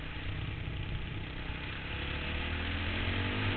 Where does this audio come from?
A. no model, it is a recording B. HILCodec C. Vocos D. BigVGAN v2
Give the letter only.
A